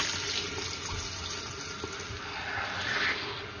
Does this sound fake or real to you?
real